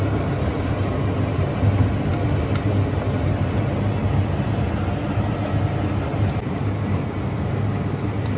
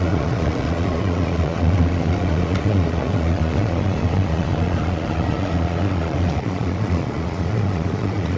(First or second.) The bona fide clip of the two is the first